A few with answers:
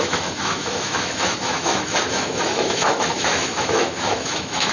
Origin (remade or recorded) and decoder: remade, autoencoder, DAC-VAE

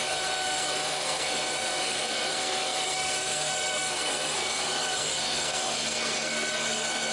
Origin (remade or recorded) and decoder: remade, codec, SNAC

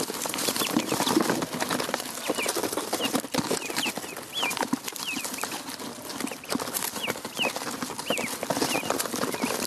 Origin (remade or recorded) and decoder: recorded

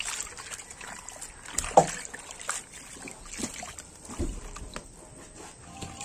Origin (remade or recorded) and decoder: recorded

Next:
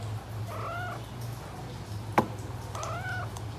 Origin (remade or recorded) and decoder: recorded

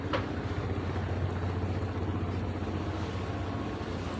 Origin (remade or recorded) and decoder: recorded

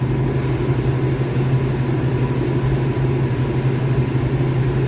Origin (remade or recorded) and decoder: recorded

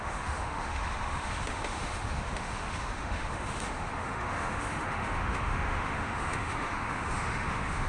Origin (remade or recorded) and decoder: remade, autoencoder, DAC-VAE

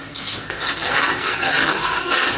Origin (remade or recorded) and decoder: remade, codec, SNAC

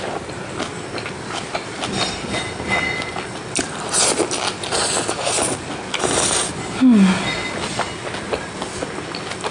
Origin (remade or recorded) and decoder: recorded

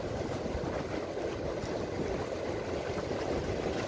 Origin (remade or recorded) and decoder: recorded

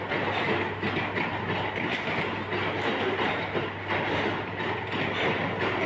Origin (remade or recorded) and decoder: recorded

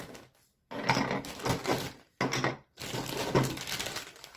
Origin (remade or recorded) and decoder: recorded